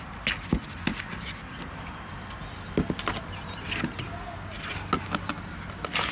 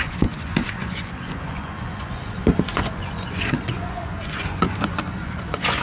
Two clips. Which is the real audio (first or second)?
first